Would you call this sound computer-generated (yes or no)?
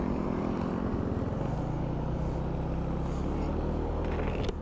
no